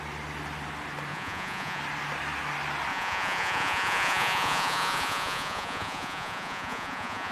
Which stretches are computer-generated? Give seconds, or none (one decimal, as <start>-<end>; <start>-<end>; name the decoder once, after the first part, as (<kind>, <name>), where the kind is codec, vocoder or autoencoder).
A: 1.1-1.8 (vocoder, Vocos); 2.9-7.3